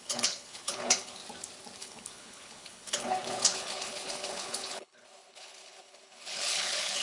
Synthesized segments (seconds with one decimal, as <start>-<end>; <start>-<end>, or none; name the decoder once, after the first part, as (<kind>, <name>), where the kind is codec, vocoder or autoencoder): 0.0-1.2 (codec, HILCodec); 1.8-7.0